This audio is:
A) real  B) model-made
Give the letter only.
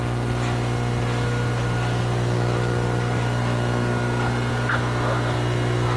A